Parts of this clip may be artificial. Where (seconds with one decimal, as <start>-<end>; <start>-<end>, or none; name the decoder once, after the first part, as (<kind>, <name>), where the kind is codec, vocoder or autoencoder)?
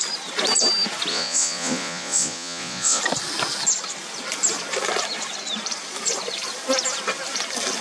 1.1-3.0 (vocoder, Vocos)